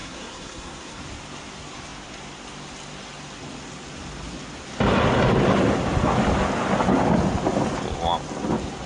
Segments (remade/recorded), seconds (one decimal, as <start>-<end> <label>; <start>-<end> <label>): 0.0-1.0 remade; 1.0-8.9 recorded